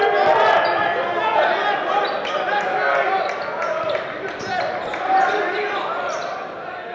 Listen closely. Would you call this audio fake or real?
real